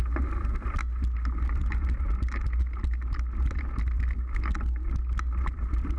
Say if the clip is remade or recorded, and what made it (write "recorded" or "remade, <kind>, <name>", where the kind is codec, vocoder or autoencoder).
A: recorded